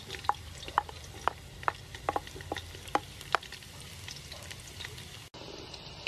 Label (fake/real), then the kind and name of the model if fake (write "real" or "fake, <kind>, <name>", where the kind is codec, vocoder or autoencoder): real